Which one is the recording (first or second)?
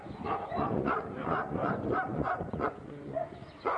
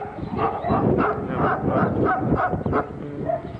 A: second